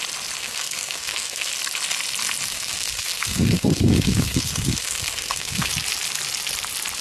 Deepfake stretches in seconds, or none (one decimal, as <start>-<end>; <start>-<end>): 0.4-1.5; 2.5-5.7